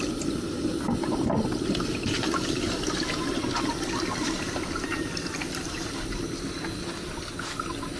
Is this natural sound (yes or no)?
yes